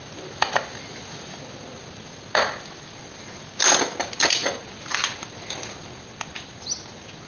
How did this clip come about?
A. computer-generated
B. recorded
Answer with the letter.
B